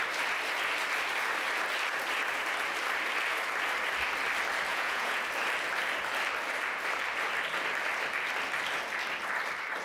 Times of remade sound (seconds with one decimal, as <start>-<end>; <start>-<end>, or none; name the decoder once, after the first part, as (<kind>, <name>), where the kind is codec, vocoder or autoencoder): 4.7-5.2 (vocoder, Vocos)